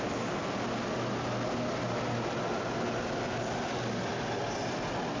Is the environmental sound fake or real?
real